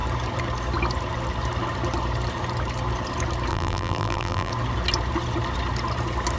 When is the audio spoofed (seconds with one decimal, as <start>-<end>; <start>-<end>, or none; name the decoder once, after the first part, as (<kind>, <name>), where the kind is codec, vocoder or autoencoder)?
3.5-4.5 (vocoder, BigVGAN v2)